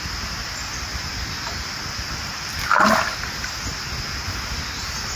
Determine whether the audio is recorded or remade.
recorded